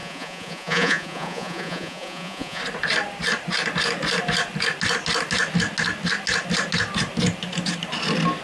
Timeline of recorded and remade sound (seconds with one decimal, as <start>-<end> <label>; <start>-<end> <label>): 0.0-2.6 remade; 2.6-8.4 recorded